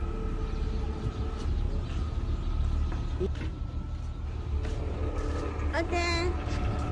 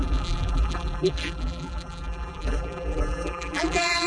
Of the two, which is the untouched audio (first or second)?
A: first